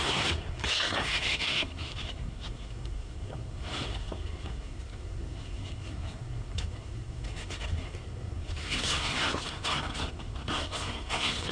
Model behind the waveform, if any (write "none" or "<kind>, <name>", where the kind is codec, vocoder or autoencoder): codec, SNAC